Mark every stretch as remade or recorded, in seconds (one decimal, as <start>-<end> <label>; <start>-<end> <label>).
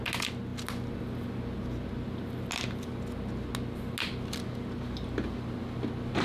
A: 0.0-6.2 recorded